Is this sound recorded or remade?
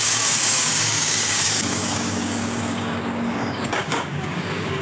remade